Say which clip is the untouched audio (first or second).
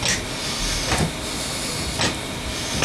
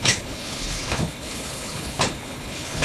first